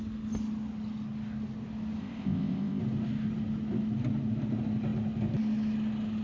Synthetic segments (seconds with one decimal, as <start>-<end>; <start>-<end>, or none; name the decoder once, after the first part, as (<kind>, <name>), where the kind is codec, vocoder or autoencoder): 2.0-2.8 (codec, ZipCodec)